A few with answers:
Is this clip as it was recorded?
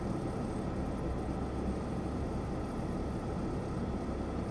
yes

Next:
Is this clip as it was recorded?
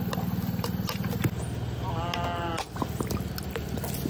yes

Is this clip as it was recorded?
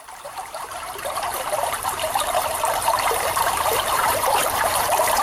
no